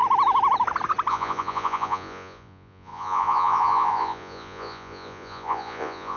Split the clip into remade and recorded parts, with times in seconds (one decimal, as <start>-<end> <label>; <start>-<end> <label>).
0.0-1.1 recorded; 1.1-6.2 remade